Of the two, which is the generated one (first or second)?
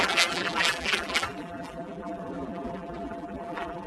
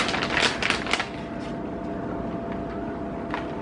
first